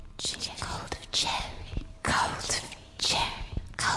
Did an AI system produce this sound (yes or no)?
yes